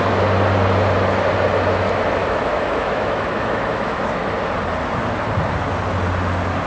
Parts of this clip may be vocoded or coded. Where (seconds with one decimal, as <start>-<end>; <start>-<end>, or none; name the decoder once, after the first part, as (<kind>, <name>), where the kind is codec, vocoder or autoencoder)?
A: 2.2-4.3 (autoencoder, DAC-VAE)